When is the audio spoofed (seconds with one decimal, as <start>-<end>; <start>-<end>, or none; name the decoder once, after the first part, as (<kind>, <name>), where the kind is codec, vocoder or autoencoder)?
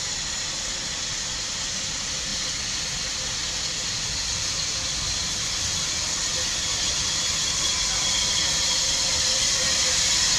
none